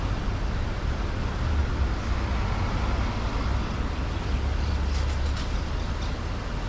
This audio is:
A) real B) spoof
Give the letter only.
A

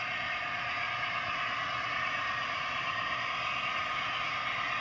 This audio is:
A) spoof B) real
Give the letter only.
B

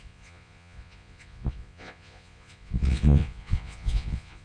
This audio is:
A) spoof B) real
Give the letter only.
A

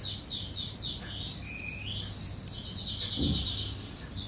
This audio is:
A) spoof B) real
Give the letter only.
B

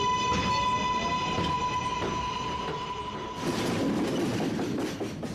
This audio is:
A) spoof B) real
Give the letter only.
B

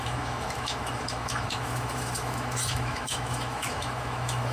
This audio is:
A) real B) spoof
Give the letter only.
B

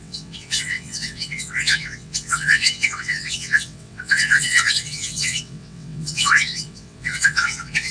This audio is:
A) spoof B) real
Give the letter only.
A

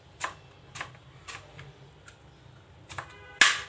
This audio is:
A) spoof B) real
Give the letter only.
B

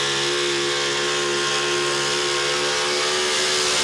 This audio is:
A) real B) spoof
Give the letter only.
A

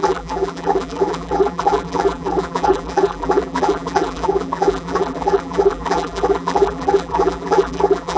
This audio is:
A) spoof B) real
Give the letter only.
A